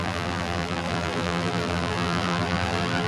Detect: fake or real fake